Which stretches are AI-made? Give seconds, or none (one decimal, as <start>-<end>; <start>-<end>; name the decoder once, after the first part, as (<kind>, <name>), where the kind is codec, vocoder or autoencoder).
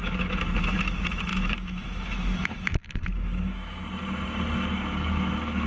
0.0-3.8 (autoencoder, DAC-VAE); 4.9-5.7